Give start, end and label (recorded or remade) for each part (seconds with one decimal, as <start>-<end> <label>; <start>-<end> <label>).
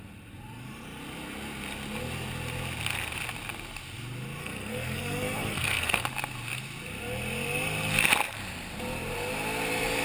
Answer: 0.0-4.4 recorded; 4.4-6.0 remade; 6.0-10.0 recorded